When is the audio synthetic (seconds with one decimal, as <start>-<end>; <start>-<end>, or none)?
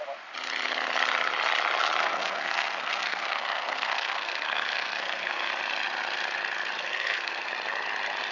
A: 2.0-5.5; 6.8-7.5